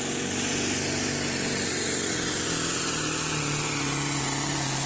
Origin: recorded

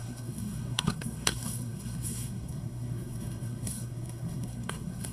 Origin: remade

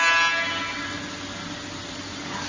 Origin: recorded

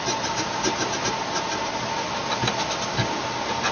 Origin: recorded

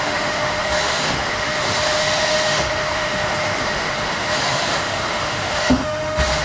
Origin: remade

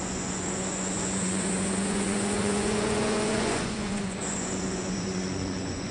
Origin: remade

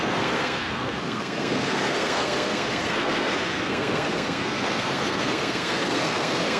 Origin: remade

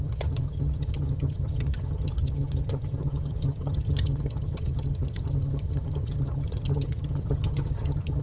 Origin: remade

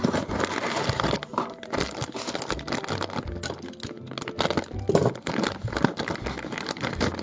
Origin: recorded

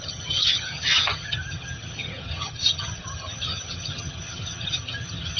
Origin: remade